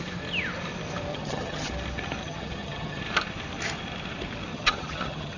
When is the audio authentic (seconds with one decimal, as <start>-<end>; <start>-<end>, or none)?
0.0-1.1; 1.7-2.2; 3.0-4.5

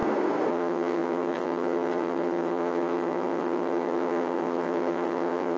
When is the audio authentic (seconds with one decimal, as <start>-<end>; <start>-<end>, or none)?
0.0-0.5

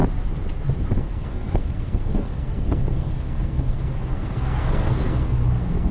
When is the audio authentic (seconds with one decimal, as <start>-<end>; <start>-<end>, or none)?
0.0-0.9

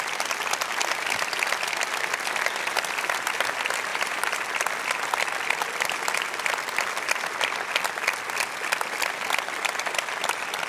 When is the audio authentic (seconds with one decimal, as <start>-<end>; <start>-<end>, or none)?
0.0-3.9; 4.4-10.7